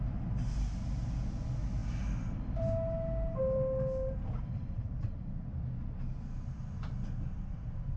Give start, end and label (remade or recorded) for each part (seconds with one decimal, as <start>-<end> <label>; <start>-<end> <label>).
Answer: 0.0-8.0 recorded